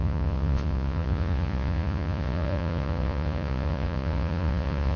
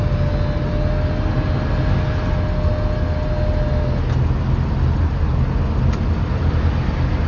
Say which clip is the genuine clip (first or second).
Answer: second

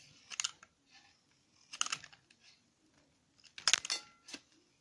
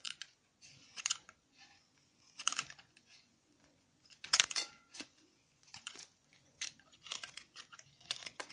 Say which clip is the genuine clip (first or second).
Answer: first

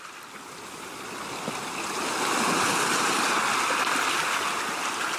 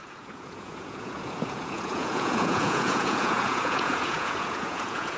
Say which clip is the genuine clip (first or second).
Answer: first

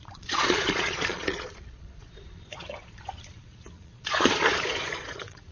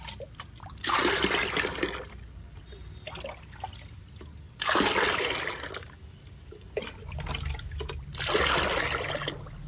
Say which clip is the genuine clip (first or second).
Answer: second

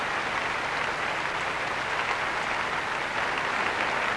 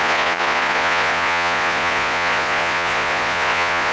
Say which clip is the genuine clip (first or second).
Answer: first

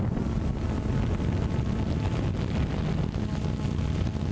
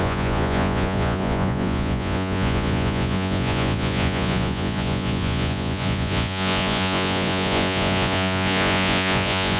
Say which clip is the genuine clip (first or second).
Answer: first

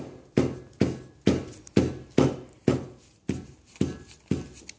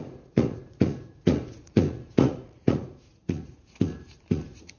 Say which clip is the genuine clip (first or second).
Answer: first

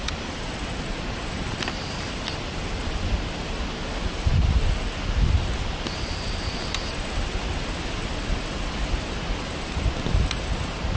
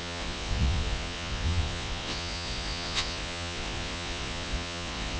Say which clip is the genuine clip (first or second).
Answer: first